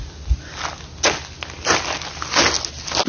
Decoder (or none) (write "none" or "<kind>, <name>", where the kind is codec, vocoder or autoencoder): none